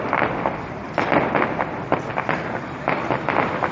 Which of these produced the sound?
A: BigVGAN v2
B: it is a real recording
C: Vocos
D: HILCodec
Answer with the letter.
B